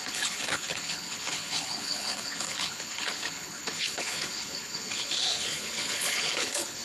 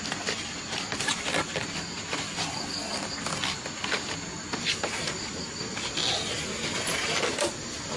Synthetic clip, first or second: first